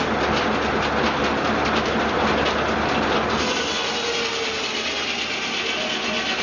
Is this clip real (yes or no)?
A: yes